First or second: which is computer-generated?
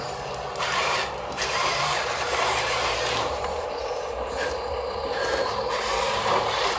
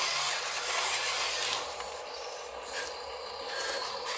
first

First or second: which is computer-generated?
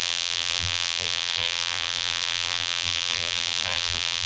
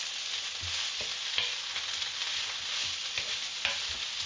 first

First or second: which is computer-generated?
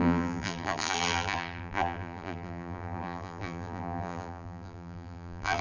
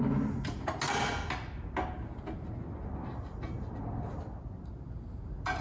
first